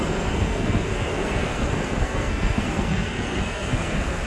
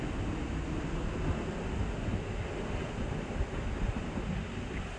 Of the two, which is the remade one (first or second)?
first